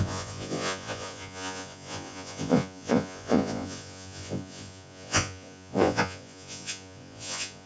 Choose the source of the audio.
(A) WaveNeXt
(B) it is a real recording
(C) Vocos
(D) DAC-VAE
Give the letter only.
C